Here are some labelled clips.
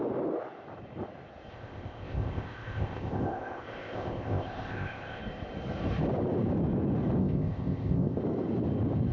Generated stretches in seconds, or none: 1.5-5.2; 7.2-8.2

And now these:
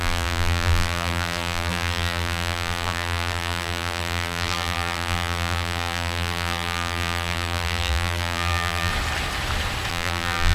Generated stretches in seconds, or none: 0.0-8.9; 9.9-10.5

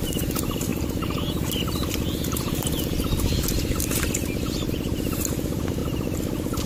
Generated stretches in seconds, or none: none